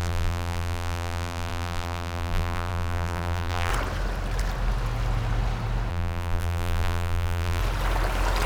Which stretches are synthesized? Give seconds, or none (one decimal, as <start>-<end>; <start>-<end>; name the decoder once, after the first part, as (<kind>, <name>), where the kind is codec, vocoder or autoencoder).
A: 0.0-3.7 (vocoder, BigVGAN v2); 5.9-7.6